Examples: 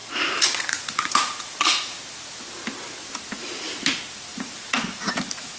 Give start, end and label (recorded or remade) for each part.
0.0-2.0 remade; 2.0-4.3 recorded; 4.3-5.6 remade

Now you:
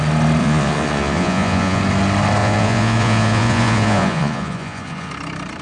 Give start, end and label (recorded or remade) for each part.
0.0-0.4 recorded; 0.4-1.8 remade; 1.8-2.4 recorded; 2.4-5.1 remade; 5.1-5.6 recorded

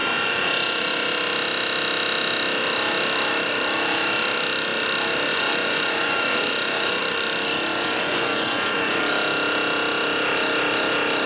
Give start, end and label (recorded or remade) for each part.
0.0-1.1 remade; 1.1-5.3 recorded; 5.3-7.0 remade; 7.0-7.7 recorded; 7.7-9.0 remade; 9.0-11.3 recorded